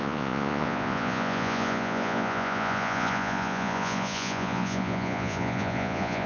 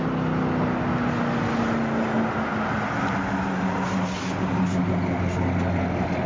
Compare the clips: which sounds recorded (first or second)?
second